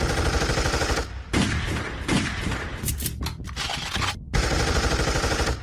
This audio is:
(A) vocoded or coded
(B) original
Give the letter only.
B